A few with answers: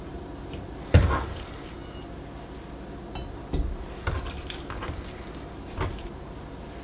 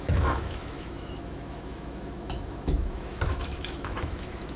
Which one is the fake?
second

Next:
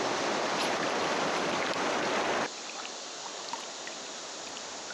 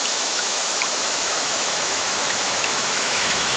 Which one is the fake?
second